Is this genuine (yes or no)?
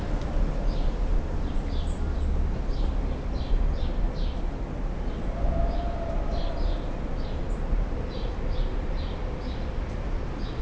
yes